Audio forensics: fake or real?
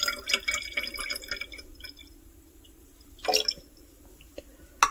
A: real